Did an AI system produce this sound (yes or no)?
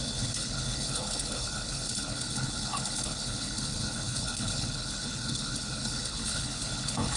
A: yes